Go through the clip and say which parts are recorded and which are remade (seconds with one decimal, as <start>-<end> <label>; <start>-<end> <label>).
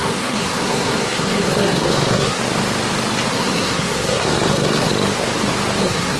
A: 0.0-2.4 remade; 2.4-3.3 recorded; 3.3-4.9 remade; 4.9-5.8 recorded; 5.8-6.2 remade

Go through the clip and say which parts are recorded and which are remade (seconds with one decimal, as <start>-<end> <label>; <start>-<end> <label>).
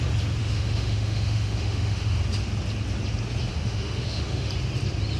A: 0.0-0.4 recorded; 0.4-2.2 remade; 2.2-3.5 recorded; 3.5-4.5 remade; 4.5-5.2 recorded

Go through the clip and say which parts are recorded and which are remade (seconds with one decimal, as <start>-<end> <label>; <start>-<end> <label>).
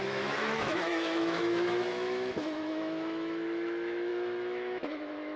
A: 0.0-5.4 remade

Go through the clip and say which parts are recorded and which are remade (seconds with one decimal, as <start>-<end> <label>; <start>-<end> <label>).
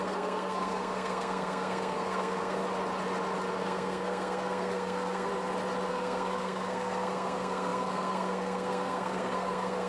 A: 0.0-2.6 remade; 2.6-3.5 recorded; 3.5-5.3 remade; 5.3-5.9 recorded; 5.9-9.9 remade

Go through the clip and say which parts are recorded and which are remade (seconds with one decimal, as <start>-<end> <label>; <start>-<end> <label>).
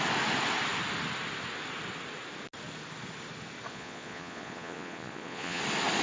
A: 0.0-3.7 recorded; 3.7-5.6 remade; 5.6-6.0 recorded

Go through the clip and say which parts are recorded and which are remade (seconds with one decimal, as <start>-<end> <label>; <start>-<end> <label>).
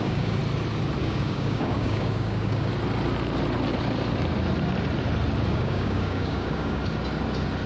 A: 0.0-0.4 remade; 0.4-1.0 recorded; 1.0-2.7 remade; 2.7-5.5 recorded; 5.5-6.8 remade; 6.8-7.7 recorded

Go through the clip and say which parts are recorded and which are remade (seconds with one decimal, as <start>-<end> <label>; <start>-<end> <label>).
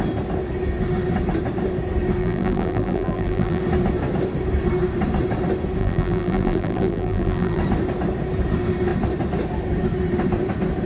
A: 0.0-2.2 recorded; 2.2-3.6 remade; 3.6-5.8 recorded; 5.8-7.6 remade; 7.6-10.9 recorded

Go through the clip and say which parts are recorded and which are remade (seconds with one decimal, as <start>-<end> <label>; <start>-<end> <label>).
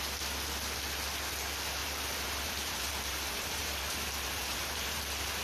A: 0.0-1.8 recorded; 1.8-5.0 remade; 5.0-5.4 recorded